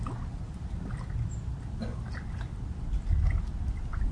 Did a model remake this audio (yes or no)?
no